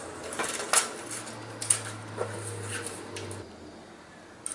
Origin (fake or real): real